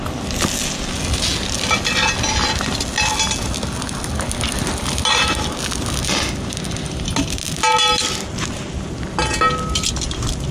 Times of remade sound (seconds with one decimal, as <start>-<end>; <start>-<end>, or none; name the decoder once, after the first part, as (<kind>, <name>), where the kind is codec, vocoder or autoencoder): none